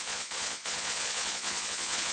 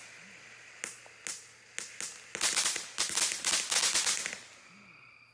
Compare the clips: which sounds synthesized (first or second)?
first